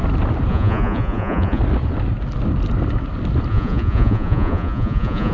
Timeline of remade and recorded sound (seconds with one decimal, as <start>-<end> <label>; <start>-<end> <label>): 0.0-0.5 recorded; 0.5-1.6 remade; 1.6-3.5 recorded; 3.5-5.3 remade

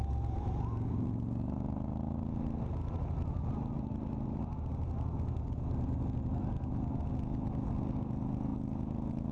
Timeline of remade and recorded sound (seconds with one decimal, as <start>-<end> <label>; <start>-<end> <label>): 0.0-9.3 recorded

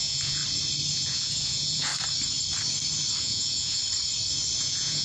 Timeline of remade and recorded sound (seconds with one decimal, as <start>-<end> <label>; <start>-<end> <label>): 0.0-0.4 remade; 0.4-0.9 recorded; 0.9-1.9 remade; 1.9-3.2 recorded; 3.2-3.8 remade; 3.8-4.6 recorded; 4.6-5.0 remade